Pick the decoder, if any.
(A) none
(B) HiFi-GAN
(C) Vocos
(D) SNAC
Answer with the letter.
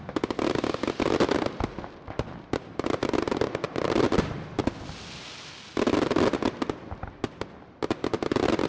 A